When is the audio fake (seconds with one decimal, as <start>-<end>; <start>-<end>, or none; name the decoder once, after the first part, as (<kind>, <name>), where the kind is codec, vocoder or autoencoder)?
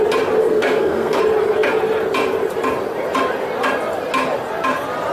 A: 0.4-1.2 (codec, SNAC)